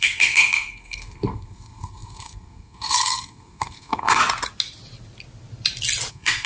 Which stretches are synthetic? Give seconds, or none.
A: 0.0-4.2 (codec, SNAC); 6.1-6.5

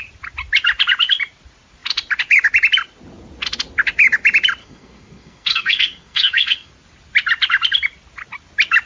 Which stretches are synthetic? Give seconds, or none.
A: 4.6-6.7 (codec, SNAC)

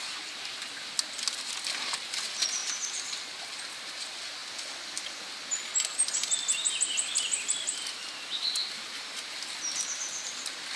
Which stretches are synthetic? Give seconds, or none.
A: none

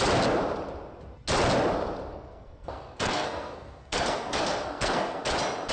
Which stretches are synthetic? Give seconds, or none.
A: 2.1-5.2 (codec, SNAC)